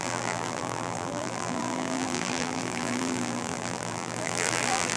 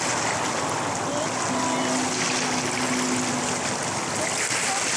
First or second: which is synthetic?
first